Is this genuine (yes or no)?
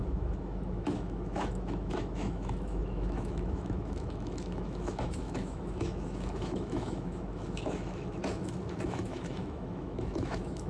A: no